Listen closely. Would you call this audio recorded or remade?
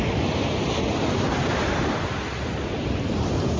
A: recorded